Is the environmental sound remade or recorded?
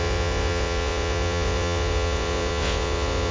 remade